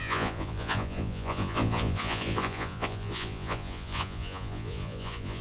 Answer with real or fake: fake